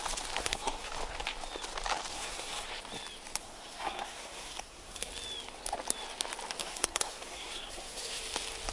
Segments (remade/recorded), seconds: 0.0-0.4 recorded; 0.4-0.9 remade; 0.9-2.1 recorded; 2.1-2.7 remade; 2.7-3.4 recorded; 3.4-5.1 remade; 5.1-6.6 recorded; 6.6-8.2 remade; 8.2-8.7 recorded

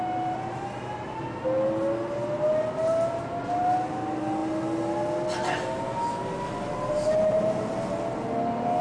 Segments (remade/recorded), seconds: 0.0-8.8 recorded

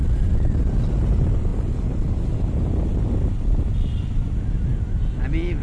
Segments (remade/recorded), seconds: 0.0-5.6 recorded

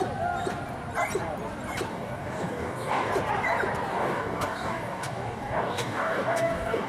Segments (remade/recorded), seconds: 0.0-1.9 recorded; 1.9-3.1 remade; 3.1-3.9 recorded; 3.9-6.9 remade

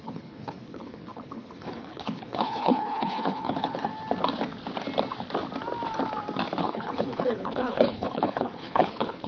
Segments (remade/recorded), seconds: 0.0-3.9 remade; 3.9-6.6 recorded; 6.6-9.3 remade